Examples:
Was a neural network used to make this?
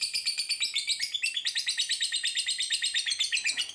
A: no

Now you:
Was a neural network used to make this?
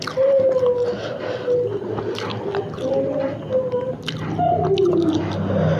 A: no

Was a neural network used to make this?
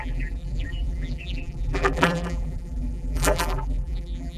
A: yes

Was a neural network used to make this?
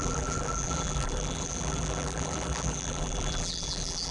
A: yes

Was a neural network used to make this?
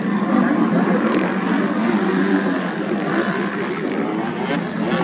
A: no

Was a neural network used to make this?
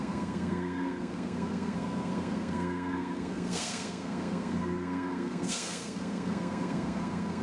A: yes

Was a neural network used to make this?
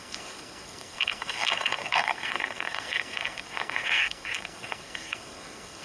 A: yes